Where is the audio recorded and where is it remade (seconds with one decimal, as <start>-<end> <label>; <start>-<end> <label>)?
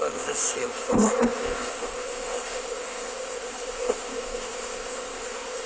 0.0-5.7 remade